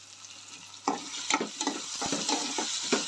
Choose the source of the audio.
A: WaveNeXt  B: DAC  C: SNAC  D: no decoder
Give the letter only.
D